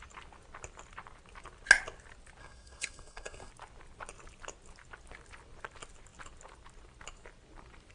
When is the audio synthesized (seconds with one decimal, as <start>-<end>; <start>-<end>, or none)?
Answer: 2.4-3.5